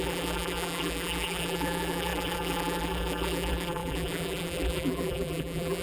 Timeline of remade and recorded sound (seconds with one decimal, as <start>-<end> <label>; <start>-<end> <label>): 0.0-5.8 remade